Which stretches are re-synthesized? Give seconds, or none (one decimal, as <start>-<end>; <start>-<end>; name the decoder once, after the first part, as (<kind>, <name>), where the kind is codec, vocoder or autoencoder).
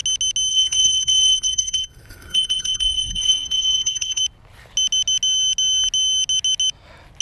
0.5-4.2 (codec, SNAC)